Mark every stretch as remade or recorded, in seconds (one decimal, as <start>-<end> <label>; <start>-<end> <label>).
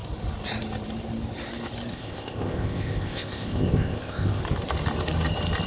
0.0-1.9 recorded; 1.9-4.4 remade; 4.4-5.7 recorded